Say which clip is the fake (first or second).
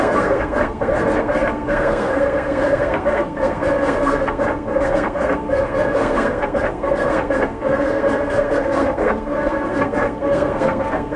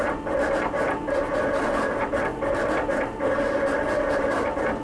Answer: first